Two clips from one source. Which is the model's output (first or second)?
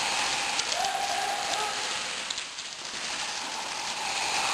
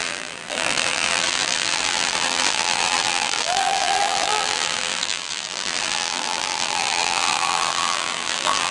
second